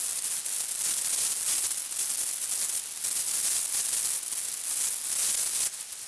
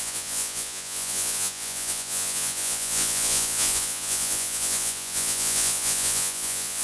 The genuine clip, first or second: first